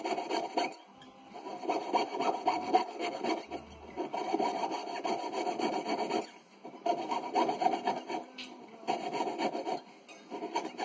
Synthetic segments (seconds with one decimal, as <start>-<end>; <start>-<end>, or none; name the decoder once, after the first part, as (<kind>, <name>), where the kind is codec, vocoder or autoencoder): 2.5-3.2 (codec, SNAC)